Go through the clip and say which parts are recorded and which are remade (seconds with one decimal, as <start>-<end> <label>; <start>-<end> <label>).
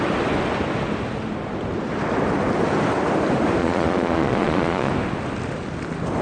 0.0-3.6 recorded; 3.6-4.9 remade; 4.9-6.2 recorded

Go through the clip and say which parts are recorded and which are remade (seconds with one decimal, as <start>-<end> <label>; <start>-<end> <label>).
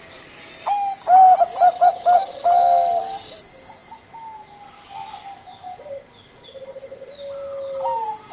0.0-8.3 recorded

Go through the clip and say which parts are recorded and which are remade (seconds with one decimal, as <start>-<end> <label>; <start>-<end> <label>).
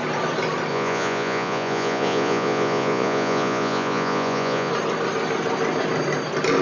0.0-0.7 recorded; 0.7-4.7 remade; 4.7-6.6 recorded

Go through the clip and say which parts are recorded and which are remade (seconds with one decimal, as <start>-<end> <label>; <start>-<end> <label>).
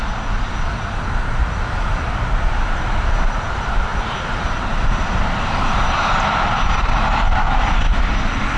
0.0-8.6 recorded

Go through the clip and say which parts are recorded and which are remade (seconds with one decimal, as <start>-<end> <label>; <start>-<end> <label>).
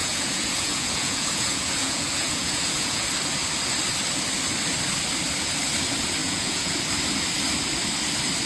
0.0-3.1 remade; 3.1-6.2 recorded; 6.2-6.8 remade; 6.8-8.5 recorded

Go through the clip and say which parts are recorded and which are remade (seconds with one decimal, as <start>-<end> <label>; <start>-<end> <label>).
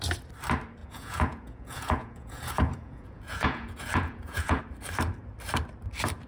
0.0-0.8 recorded; 0.8-4.6 remade; 4.6-6.3 recorded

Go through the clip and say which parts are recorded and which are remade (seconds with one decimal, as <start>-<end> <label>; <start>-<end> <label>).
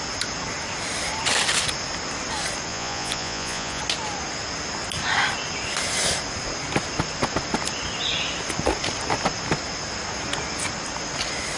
0.0-2.7 recorded; 2.7-3.8 remade; 3.8-11.6 recorded